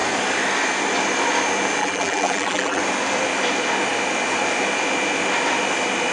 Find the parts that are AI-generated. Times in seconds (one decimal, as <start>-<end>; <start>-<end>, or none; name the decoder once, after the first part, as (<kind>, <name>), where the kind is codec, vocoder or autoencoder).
1.8-2.8 (vocoder, BigVGAN v2)